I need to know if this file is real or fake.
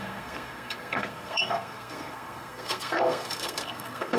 fake